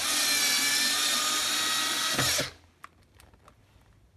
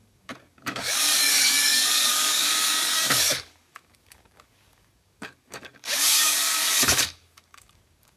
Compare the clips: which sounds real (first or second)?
first